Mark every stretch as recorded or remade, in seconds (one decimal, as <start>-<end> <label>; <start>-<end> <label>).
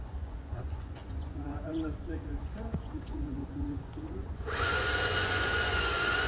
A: 0.0-6.3 remade